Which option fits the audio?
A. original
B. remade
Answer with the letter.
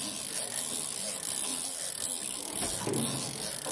A